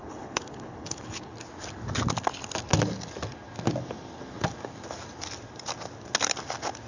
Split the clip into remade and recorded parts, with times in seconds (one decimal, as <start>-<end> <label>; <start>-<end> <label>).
0.0-1.3 remade; 1.3-6.9 recorded